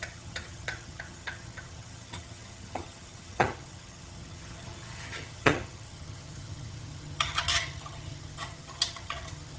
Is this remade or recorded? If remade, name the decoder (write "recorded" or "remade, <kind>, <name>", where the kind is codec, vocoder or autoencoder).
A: remade, vocoder, HiFi-GAN